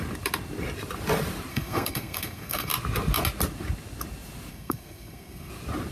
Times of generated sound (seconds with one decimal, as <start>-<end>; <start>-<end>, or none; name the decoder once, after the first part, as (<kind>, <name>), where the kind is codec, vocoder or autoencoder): 1.5-2.7 (codec, SNAC); 4.5-5.5